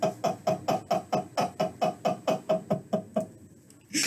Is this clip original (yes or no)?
yes